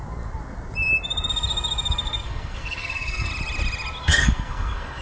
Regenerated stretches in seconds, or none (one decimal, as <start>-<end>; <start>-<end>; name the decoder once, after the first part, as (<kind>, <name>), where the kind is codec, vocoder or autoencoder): 1.9-3.3 (codec, SNAC); 4.0-5.0